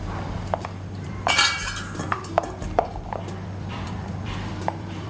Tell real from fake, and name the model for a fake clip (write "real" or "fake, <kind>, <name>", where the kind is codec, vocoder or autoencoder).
fake, vocoder, BigVGAN v2